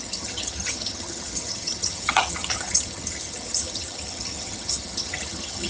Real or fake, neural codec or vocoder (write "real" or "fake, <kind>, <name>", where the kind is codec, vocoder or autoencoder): fake, vocoder, HiFi-GAN